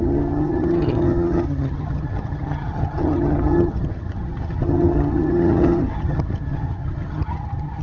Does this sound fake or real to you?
fake